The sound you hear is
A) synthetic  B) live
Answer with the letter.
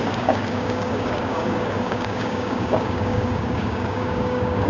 A